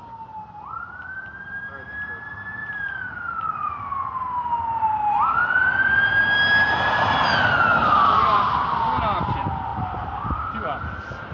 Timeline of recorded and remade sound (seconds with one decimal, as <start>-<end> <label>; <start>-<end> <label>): 0.0-2.6 recorded; 2.6-3.7 remade; 3.7-9.7 recorded; 9.7-10.8 remade; 10.8-11.3 recorded